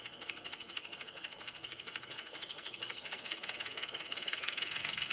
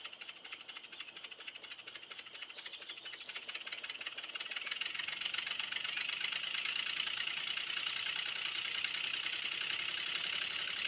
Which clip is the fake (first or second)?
first